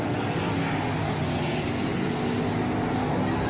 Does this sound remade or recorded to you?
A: recorded